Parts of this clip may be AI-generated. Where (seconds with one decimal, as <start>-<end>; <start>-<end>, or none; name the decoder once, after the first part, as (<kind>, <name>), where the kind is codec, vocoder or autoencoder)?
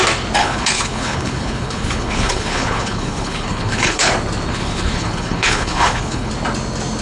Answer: 0.4-4.1 (codec, HILCodec); 4.5-6.3